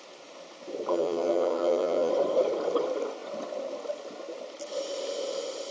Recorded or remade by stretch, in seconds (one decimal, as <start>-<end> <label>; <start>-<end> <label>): 0.0-0.9 recorded; 0.9-2.1 remade; 2.1-5.7 recorded

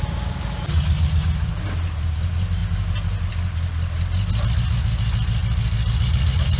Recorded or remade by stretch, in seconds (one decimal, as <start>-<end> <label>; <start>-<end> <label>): 0.0-6.6 recorded

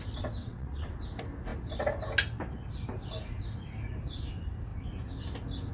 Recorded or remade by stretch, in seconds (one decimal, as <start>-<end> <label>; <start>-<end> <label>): 0.0-0.4 recorded; 0.4-0.9 remade; 0.9-5.7 recorded

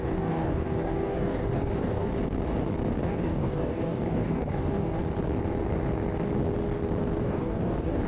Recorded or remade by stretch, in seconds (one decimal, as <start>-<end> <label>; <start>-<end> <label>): 0.0-2.1 remade; 2.1-3.1 recorded; 3.1-5.0 remade; 5.0-7.2 recorded; 7.2-8.1 remade

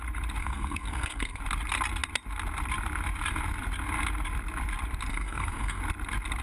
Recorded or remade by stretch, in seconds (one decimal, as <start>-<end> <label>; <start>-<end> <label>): 0.0-0.4 recorded; 0.4-1.4 remade; 1.4-5.1 recorded; 5.1-5.8 remade; 5.8-6.4 recorded

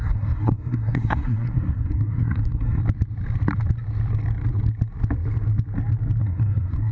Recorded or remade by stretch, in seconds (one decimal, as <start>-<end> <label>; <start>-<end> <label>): 0.0-2.8 remade; 2.8-6.2 recorded; 6.2-6.9 remade